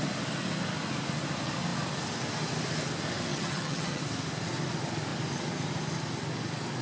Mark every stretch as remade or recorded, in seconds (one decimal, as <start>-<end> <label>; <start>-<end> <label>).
0.0-3.3 recorded; 3.3-4.0 remade; 4.0-6.8 recorded